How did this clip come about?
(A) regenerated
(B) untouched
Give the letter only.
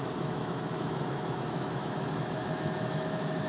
A